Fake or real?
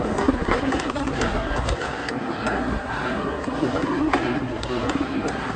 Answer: fake